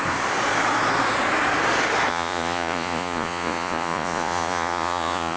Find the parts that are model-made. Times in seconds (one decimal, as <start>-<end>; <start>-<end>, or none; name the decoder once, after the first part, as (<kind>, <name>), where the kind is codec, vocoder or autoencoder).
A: 2.1-5.4 (vocoder, Vocos)